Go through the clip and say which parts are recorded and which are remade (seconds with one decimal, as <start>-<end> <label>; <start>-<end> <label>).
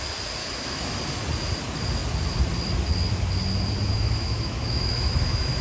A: 0.0-0.4 recorded; 0.4-1.0 remade; 1.0-3.9 recorded; 3.9-5.6 remade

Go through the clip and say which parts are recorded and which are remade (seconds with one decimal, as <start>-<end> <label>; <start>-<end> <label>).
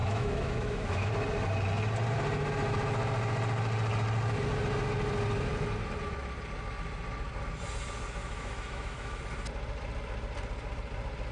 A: 0.0-1.1 remade; 1.1-8.2 recorded; 8.2-9.2 remade; 9.2-11.3 recorded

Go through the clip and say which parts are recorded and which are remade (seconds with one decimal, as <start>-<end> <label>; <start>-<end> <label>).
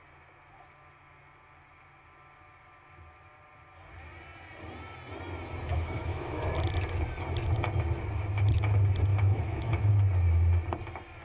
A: 0.0-5.7 recorded; 5.7-6.5 remade; 6.5-9.1 recorded; 9.1-9.9 remade; 9.9-11.2 recorded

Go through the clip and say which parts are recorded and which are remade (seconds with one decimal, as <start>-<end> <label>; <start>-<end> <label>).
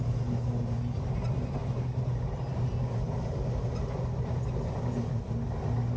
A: 0.0-6.0 recorded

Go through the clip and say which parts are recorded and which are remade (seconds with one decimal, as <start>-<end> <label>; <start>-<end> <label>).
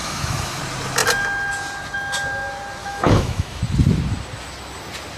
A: 0.0-0.6 remade; 0.6-2.8 recorded; 2.8-3.6 remade; 3.6-5.2 recorded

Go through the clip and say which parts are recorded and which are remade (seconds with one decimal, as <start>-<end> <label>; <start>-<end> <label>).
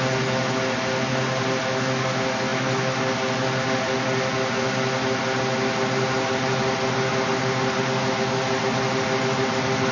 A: 0.0-9.9 recorded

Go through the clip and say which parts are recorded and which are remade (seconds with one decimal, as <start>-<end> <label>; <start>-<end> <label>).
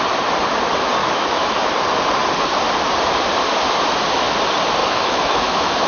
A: 0.0-1.0 recorded; 1.0-1.7 remade; 1.7-4.8 recorded; 4.8-5.9 remade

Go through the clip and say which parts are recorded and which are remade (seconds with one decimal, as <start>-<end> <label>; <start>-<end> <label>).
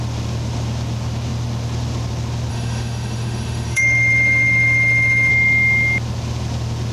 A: 0.0-2.5 recorded; 2.5-5.3 remade; 5.3-6.9 recorded